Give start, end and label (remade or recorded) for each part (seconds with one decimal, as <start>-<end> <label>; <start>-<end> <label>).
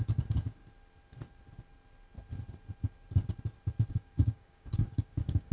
0.0-0.6 remade; 0.6-3.9 recorded; 3.9-5.5 remade